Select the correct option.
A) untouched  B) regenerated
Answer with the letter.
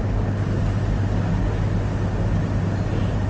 A